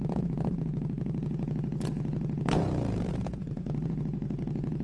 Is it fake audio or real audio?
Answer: fake